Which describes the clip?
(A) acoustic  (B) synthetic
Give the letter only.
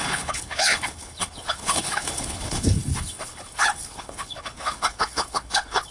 B